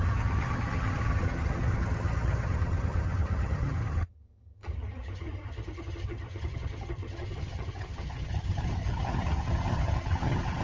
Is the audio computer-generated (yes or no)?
yes